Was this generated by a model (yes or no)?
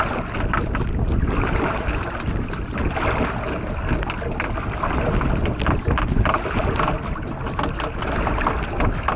no